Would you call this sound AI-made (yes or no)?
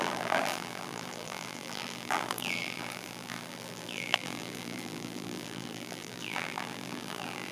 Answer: yes